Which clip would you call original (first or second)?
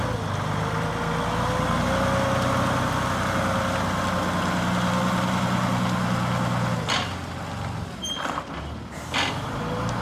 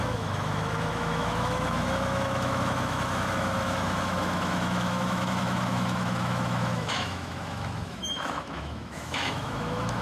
first